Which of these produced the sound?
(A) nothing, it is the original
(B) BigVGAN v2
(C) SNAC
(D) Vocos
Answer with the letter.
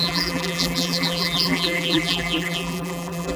B